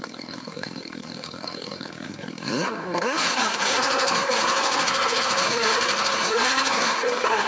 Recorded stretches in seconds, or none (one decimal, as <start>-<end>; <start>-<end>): none